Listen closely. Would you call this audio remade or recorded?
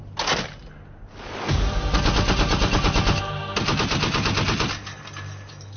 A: recorded